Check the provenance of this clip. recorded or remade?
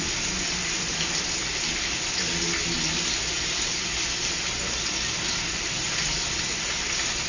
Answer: recorded